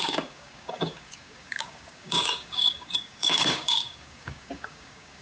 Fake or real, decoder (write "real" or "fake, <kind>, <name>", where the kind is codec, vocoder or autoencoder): fake, codec, DAC